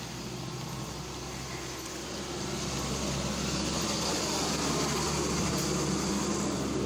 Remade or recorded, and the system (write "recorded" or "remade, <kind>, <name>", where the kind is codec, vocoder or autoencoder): recorded